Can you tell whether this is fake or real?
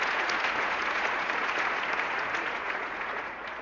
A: fake